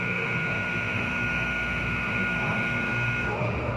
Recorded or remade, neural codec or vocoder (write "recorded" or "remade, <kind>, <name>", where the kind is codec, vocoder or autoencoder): remade, autoencoder, DAC-VAE